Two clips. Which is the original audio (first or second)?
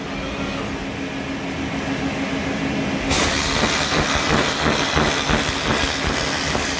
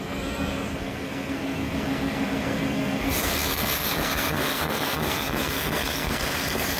first